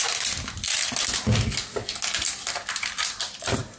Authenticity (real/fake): real